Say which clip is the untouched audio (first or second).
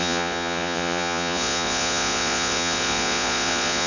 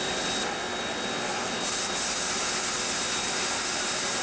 second